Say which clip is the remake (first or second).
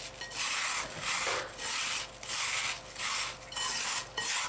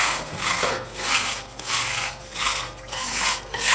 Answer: second